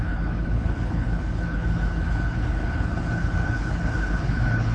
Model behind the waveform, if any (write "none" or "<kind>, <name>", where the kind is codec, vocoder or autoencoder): codec, HILCodec